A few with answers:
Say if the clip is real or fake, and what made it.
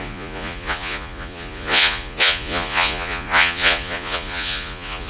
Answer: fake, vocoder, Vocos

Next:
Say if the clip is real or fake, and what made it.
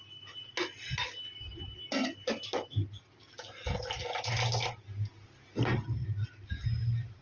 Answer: real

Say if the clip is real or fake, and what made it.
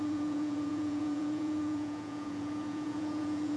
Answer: fake, vocoder, Vocos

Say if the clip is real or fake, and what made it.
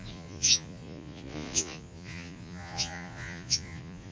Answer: fake, vocoder, Vocos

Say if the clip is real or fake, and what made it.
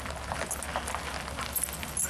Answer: real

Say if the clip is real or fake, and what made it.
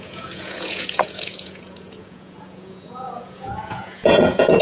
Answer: fake, vocoder, Vocos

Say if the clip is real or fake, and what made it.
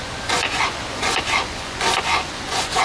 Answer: fake, vocoder, Vocos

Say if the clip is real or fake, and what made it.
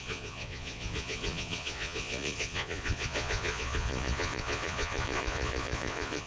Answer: fake, vocoder, Vocos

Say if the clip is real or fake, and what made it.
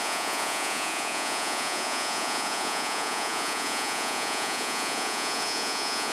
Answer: fake, vocoder, Vocos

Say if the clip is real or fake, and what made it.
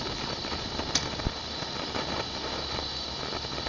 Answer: real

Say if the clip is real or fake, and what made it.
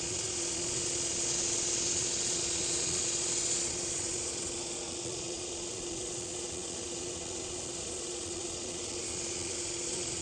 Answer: fake, vocoder, Vocos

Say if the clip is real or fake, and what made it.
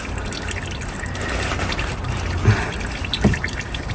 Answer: real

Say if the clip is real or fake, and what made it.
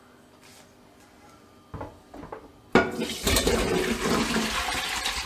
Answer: real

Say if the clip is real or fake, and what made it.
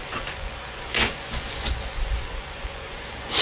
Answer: fake, vocoder, Vocos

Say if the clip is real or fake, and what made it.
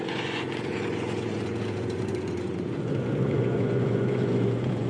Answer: fake, vocoder, Vocos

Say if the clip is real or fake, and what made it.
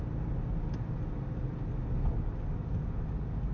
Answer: real